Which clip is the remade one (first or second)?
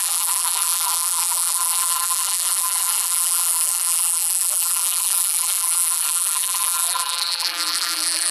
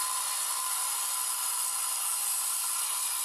first